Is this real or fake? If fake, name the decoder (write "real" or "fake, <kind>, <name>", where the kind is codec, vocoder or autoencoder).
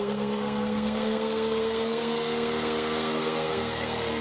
fake, codec, SNAC